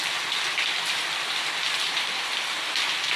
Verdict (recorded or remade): remade